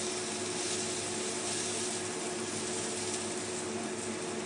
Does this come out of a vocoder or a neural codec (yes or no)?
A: no